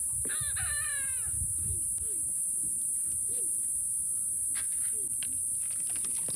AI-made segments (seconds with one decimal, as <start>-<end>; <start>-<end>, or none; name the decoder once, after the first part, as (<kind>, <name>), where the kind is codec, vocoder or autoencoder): none